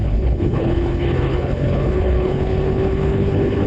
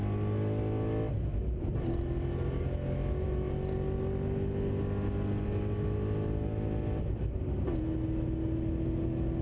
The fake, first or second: first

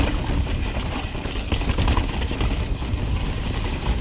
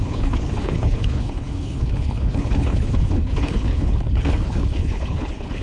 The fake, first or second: second